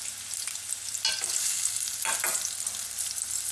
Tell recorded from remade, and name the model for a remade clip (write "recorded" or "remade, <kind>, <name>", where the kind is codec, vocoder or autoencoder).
recorded